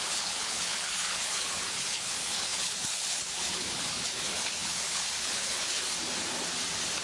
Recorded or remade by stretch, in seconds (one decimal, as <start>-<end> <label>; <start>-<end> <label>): 0.0-5.8 remade; 5.8-7.0 recorded